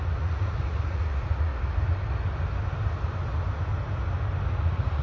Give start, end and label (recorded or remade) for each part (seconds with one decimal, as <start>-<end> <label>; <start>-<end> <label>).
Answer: 0.0-1.5 remade; 1.5-4.5 recorded; 4.5-5.0 remade